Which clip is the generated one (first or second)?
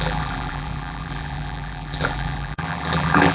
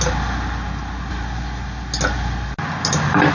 first